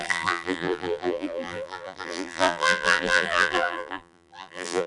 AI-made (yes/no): yes